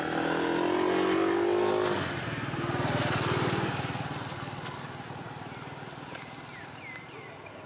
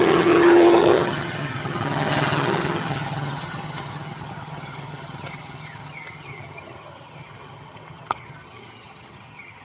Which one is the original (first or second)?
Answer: first